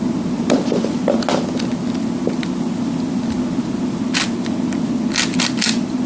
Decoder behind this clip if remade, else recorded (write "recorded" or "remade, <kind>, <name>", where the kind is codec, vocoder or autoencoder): recorded